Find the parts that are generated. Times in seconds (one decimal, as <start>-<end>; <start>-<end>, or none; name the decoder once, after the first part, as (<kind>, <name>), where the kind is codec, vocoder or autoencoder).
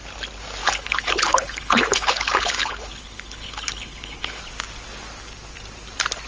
0.6-4.4 (codec, HILCodec)